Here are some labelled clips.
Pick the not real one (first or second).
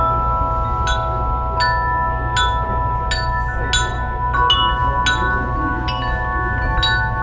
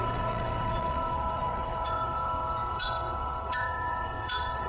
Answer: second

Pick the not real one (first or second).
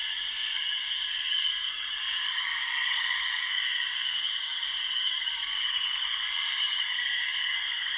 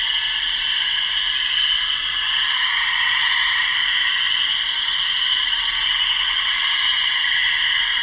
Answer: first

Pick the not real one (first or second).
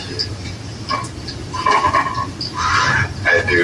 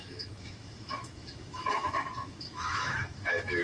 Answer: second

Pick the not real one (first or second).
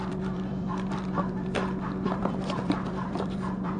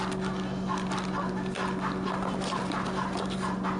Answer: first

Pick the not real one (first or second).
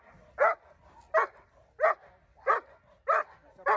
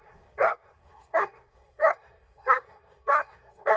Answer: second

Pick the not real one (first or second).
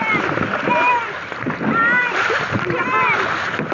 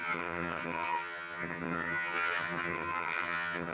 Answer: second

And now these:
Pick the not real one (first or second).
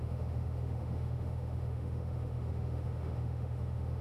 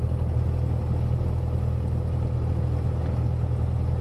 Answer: first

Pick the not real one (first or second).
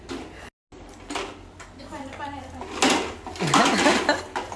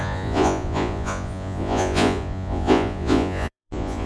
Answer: second